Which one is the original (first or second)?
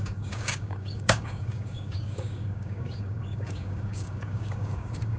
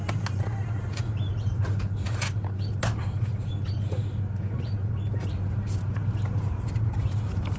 second